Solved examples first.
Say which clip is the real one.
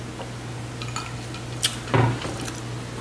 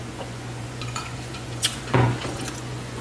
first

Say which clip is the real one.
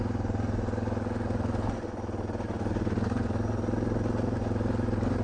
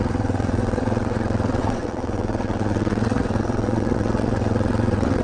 first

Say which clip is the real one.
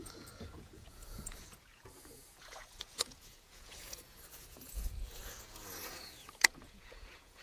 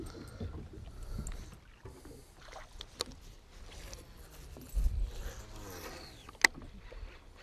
second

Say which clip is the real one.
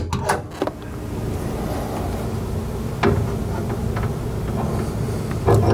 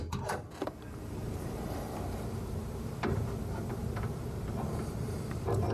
first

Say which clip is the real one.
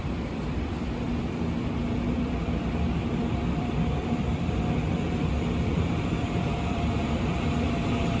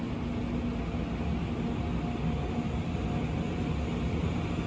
second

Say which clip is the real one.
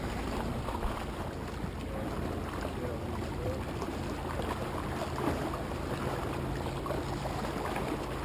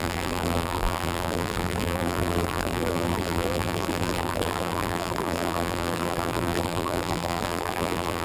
first